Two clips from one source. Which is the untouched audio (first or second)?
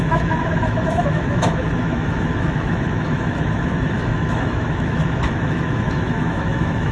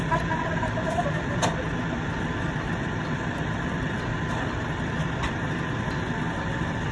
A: second